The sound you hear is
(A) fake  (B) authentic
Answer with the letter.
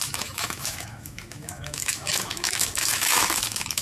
A